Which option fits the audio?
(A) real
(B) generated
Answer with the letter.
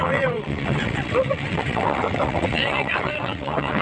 B